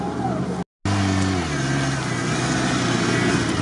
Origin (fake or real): real